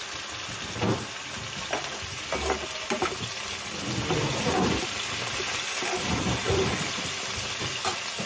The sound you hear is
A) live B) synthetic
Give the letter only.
A